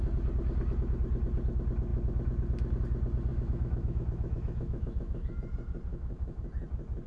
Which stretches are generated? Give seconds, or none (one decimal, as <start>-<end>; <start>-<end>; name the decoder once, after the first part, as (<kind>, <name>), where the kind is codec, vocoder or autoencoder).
3.3-5.3 (autoencoder, DAC-VAE); 5.9-6.4